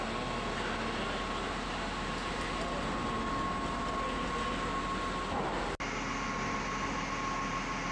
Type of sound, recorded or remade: recorded